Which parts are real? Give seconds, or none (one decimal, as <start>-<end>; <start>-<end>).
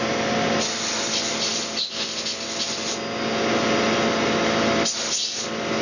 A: 0.0-5.8